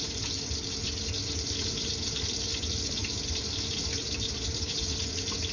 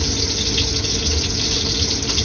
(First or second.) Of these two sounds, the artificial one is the first